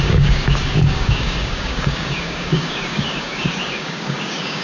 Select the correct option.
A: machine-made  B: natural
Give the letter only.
A